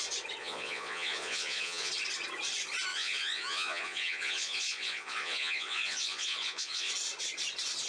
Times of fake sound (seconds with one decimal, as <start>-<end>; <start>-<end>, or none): 0.4-1.9; 2.9-6.9